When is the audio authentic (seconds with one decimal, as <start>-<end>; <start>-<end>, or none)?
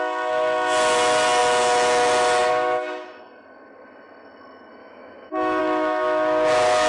0.0-4.8; 5.6-6.9